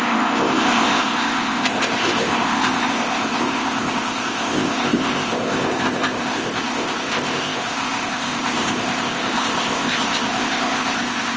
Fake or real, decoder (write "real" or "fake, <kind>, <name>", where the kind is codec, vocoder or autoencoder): fake, codec, ZipCodec